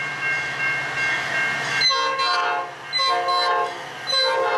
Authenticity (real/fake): real